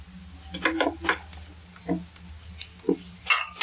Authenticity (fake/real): real